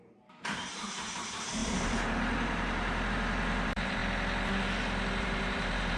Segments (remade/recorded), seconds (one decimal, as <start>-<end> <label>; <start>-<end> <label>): 0.0-4.0 remade; 4.0-5.2 recorded; 5.2-6.0 remade